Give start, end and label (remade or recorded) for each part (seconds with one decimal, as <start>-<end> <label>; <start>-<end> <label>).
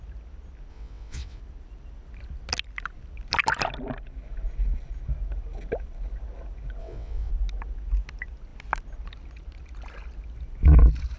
0.0-0.7 recorded; 0.7-1.4 remade; 1.4-6.8 recorded; 6.8-7.3 remade; 7.3-11.2 recorded